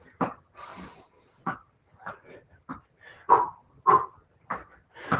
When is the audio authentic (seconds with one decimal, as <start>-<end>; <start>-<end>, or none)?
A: 0.0-5.2